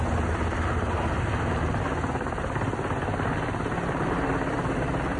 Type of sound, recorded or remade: recorded